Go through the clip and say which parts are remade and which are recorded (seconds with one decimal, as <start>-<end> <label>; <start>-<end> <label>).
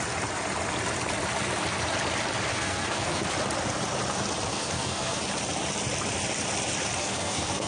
0.0-2.5 recorded; 2.5-3.2 remade; 3.2-4.5 recorded; 4.5-5.2 remade; 5.2-7.0 recorded; 7.0-7.7 remade